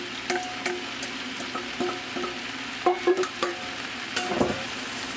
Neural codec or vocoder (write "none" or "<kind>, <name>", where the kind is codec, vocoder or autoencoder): none